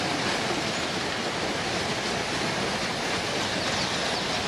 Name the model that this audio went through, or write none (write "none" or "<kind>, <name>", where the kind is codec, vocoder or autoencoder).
none